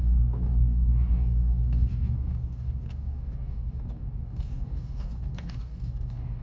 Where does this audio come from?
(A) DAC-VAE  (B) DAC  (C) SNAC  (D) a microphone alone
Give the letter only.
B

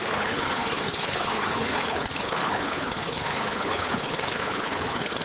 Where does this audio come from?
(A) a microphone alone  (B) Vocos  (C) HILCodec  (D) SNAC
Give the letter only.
C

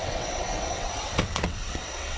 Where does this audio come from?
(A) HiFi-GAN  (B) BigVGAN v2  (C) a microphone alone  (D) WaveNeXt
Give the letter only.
D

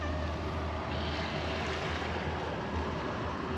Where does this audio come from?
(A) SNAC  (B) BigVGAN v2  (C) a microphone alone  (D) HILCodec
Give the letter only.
C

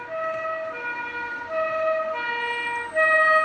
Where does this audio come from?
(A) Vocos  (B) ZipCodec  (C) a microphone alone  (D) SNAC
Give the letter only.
C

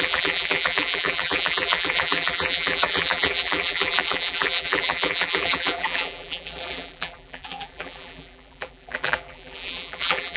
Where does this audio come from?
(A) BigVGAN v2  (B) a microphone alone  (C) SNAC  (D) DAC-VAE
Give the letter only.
A